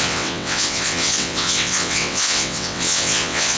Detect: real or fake fake